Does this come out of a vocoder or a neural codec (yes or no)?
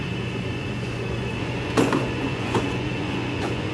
yes